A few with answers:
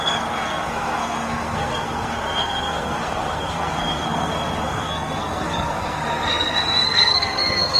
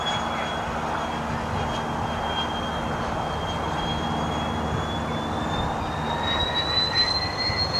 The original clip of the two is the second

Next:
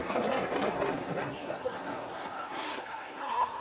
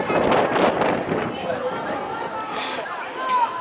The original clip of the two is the second